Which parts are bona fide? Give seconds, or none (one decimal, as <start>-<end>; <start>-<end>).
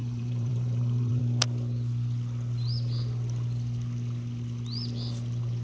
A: 1.2-5.6